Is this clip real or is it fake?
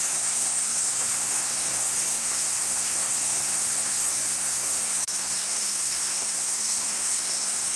fake